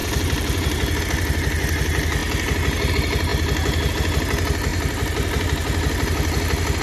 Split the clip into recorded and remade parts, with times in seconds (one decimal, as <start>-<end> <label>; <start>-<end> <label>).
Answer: 0.0-1.0 remade; 1.0-6.8 recorded